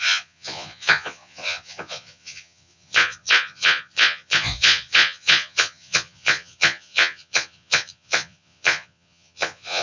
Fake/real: fake